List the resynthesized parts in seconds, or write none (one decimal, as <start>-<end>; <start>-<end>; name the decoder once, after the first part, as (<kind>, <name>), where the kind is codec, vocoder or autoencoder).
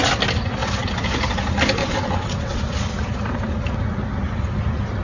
1.8-2.6 (vocoder, WaveNeXt)